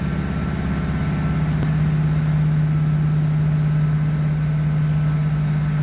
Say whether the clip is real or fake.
real